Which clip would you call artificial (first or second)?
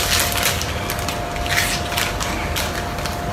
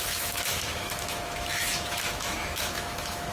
second